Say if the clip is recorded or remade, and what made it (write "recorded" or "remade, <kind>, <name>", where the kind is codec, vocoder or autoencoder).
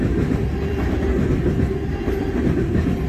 recorded